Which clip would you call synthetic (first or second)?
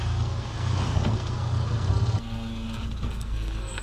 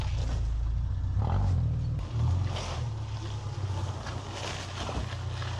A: first